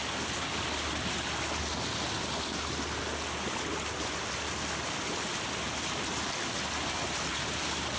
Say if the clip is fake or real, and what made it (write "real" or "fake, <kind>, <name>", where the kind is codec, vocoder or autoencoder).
real